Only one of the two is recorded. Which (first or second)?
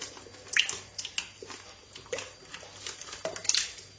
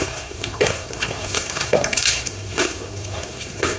first